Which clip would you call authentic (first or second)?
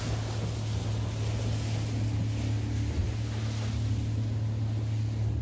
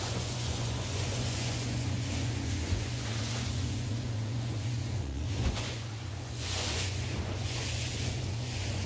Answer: first